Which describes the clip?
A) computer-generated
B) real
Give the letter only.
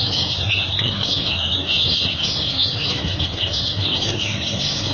A